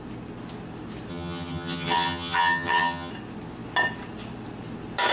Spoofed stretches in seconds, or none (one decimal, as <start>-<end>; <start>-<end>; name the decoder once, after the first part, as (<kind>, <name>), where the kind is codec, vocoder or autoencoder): 1.1-3.1 (vocoder, HiFi-GAN)